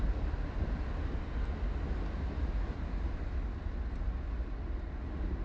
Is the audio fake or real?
real